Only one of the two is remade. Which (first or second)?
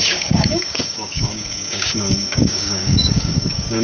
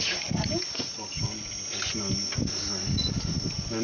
first